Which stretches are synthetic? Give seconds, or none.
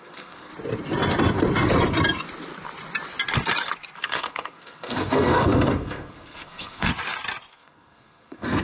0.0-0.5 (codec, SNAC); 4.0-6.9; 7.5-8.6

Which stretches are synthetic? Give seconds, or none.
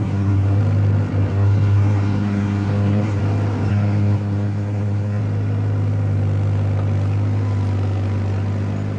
0.0-0.6 (codec, SNAC); 1.3-3.2; 3.7-5.2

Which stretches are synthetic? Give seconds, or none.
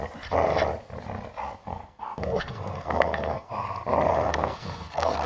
1.7-3.5 (codec, SNAC); 4.1-5.3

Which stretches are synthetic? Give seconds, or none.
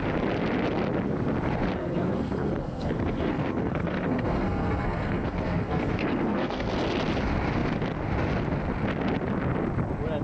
1.8-6.7 (codec, SNAC)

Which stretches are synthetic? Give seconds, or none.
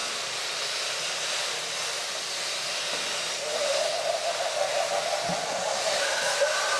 none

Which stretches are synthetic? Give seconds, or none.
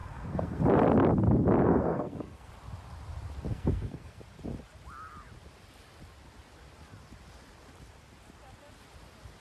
0.0-0.6 (codec, SNAC); 1.6-2.5; 3.5-4.2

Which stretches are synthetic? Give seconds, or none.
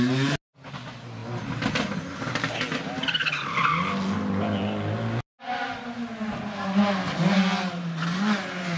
none